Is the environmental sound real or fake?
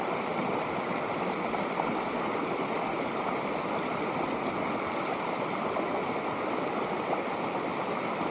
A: real